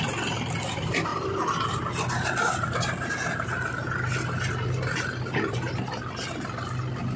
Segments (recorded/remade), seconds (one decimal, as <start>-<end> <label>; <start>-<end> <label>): 0.0-7.2 recorded